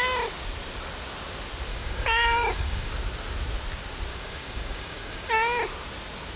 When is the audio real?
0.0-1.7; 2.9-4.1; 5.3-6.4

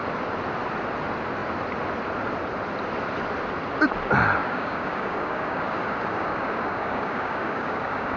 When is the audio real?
0.0-4.4

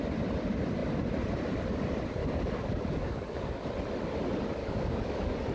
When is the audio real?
0.0-2.2; 3.7-4.6